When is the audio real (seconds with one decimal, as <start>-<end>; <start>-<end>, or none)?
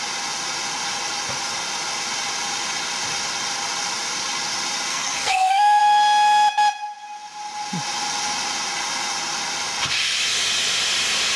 0.0-4.9; 5.8-11.4